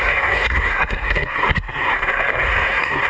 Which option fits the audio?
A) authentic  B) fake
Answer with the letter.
B